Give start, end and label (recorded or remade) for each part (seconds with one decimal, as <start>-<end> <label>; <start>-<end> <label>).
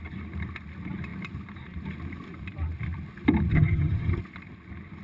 0.0-3.5 recorded; 3.5-4.2 remade; 4.2-5.0 recorded